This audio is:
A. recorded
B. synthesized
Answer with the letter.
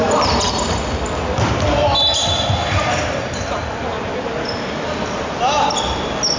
A